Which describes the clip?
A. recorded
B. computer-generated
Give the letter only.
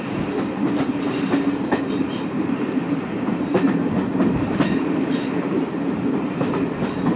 B